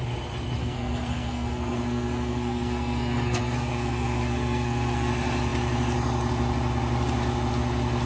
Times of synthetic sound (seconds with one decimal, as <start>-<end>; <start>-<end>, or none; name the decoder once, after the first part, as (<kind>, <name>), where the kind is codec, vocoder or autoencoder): 0.6-5.1 (codec, SNAC)